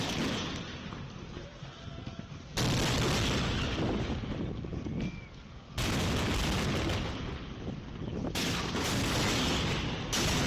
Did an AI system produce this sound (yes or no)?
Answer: no